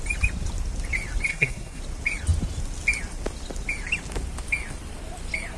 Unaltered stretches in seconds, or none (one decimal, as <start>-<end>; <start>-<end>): 0.0-1.3; 1.8-5.6